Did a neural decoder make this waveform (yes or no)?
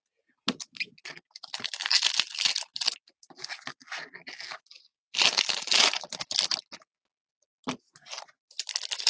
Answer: no